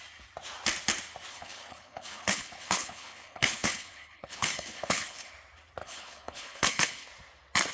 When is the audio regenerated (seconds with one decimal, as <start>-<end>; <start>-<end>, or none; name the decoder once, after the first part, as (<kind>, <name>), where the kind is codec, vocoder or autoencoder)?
1.3-5.3 (codec, HILCodec); 5.8-7.1